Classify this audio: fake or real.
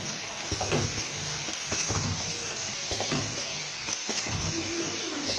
fake